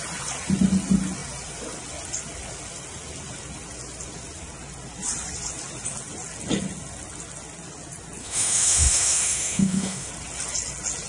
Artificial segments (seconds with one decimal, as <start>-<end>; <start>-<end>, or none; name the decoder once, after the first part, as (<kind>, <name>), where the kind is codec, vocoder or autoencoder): 8.2-10.1 (autoencoder, DAC-VAE)